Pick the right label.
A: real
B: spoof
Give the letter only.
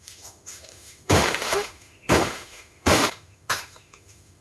B